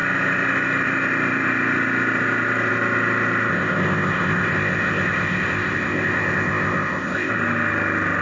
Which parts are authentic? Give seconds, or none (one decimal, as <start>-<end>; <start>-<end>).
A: 0.0-3.5; 7.3-8.2